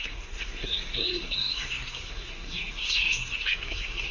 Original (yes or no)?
no